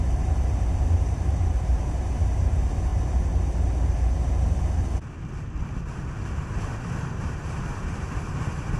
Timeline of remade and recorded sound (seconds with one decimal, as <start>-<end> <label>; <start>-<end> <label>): 0.0-2.9 remade; 2.9-6.2 recorded; 6.2-8.8 remade